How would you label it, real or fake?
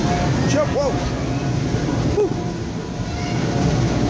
real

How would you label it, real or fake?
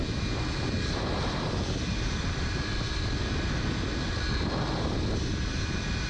real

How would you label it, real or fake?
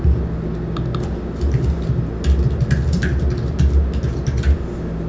real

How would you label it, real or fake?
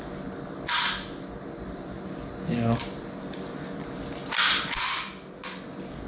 real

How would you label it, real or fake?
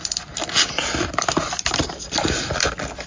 fake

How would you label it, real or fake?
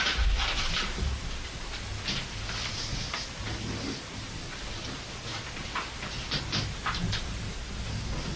real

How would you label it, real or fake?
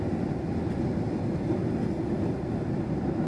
real